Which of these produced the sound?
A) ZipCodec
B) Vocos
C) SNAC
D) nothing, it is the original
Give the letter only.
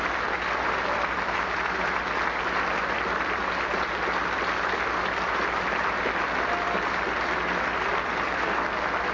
D